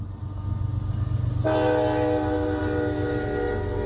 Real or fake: real